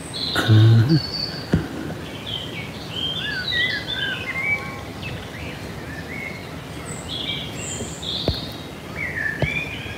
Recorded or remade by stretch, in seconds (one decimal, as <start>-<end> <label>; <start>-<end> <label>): 0.0-10.0 recorded